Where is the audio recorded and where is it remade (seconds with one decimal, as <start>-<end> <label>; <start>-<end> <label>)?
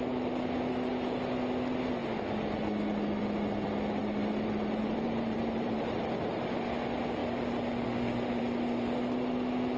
0.0-4.0 recorded; 4.0-6.4 remade; 6.4-9.8 recorded